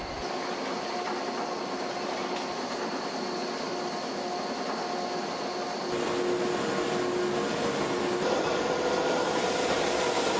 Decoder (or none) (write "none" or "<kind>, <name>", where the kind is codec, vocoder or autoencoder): none